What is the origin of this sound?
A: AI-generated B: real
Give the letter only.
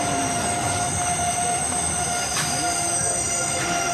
B